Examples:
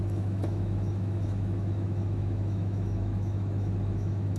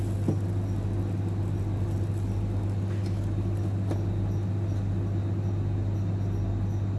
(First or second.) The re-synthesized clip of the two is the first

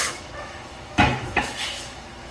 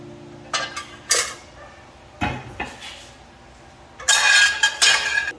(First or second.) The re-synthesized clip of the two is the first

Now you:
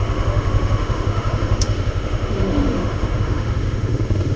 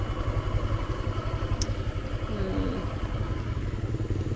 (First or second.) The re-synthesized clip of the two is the first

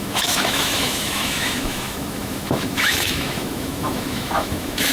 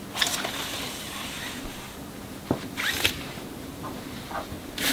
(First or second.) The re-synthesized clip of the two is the first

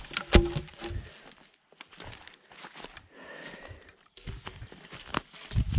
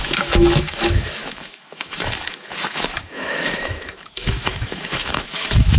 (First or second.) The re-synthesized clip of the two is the second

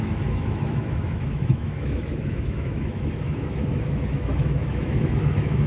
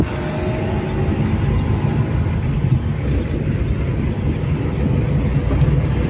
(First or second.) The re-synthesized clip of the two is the first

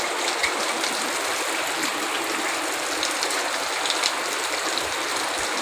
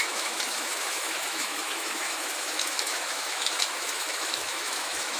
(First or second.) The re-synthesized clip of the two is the second